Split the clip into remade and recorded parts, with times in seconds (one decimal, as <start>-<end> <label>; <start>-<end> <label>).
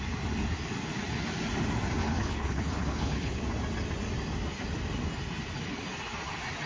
0.0-2.0 recorded; 2.0-3.4 remade; 3.4-6.7 recorded